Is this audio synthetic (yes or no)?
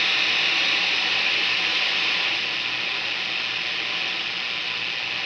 no